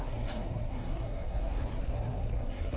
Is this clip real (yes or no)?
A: no